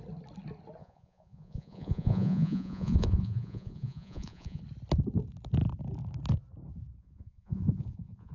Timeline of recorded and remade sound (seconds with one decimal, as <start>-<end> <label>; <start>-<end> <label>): 0.0-0.8 recorded; 0.8-4.6 remade; 4.6-7.0 recorded; 7.0-8.3 remade